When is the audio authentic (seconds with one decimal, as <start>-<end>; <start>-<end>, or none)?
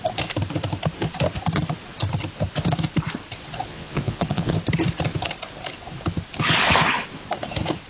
0.0-3.7; 4.5-7.9